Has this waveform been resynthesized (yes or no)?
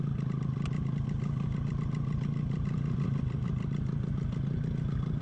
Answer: no